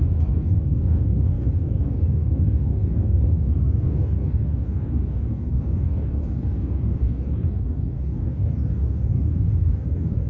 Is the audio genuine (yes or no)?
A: no